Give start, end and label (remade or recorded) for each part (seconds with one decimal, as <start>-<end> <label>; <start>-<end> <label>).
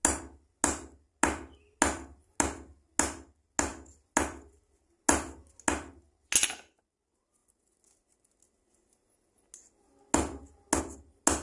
0.0-11.4 recorded